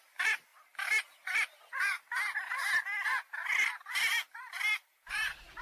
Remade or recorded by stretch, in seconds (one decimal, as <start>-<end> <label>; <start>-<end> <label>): 0.0-5.6 recorded